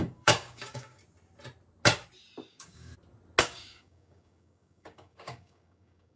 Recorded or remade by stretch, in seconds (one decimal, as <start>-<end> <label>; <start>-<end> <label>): 0.0-1.0 remade; 1.0-2.5 recorded; 2.5-2.9 remade; 2.9-3.4 recorded; 3.4-6.2 remade